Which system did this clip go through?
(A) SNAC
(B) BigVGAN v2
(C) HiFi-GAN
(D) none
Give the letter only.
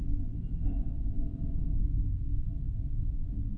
D